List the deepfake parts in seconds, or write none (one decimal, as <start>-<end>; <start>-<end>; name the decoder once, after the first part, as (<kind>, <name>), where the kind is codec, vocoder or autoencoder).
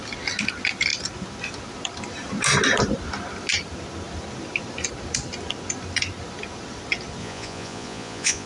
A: 7.2-8.5 (vocoder, Vocos)